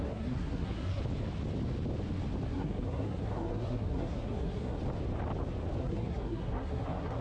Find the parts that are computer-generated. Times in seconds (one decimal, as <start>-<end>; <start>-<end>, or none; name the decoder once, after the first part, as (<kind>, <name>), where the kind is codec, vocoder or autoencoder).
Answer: 0.0-1.0 (codec, SNAC); 2.5-4.8; 5.8-7.2